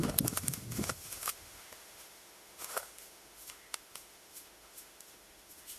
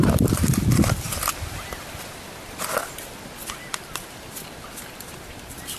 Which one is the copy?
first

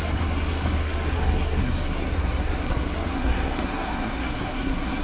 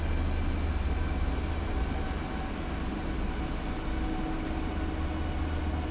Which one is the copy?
first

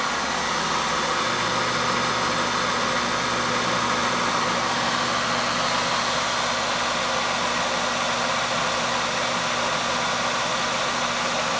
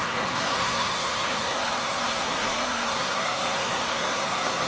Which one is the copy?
second